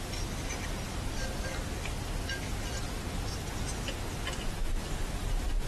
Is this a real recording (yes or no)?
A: yes